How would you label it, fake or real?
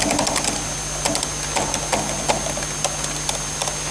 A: real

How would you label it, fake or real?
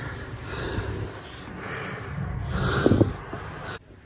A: real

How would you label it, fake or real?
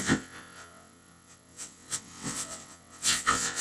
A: fake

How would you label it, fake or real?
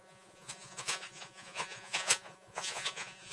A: fake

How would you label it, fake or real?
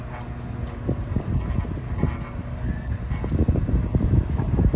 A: real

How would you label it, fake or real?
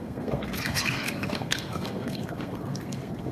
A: fake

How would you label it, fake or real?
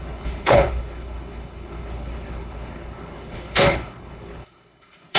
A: fake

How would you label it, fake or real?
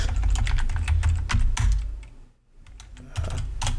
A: real